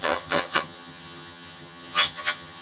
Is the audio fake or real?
fake